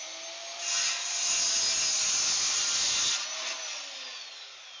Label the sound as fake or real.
real